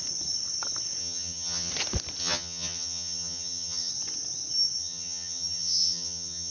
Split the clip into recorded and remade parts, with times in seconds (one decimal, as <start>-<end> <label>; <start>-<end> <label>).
0.0-1.0 recorded; 1.0-1.7 remade; 1.7-2.2 recorded; 2.2-3.9 remade; 3.9-4.8 recorded; 4.8-6.5 remade